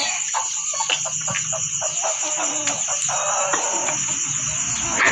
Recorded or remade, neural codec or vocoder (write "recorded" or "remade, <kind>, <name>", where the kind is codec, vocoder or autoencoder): recorded